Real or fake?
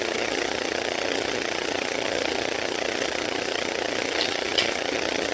fake